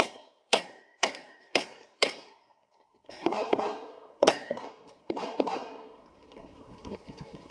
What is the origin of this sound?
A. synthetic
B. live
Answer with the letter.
A